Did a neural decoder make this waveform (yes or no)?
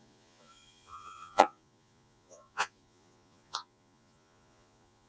yes